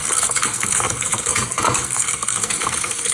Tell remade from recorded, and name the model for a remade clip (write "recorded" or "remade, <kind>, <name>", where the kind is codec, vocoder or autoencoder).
remade, codec, SNAC